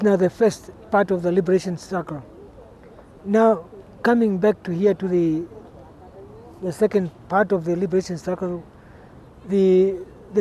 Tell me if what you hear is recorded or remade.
recorded